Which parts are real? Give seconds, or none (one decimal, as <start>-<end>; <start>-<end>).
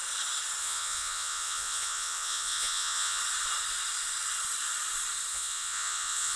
0.0-0.6; 3.2-5.3